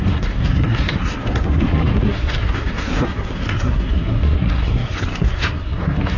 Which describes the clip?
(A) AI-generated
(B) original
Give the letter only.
A